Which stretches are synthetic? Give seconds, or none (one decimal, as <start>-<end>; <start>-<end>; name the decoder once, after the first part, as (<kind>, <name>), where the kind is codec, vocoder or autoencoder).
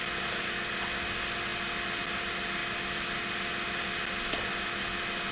none